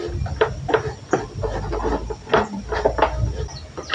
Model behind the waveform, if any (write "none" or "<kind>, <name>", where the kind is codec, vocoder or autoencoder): none